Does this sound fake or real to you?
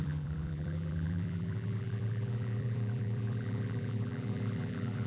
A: fake